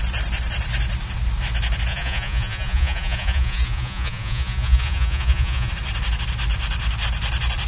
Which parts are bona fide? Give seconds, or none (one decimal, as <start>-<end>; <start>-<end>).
0.0-1.9; 5.7-7.7